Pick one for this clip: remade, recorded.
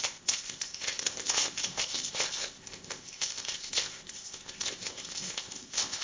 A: remade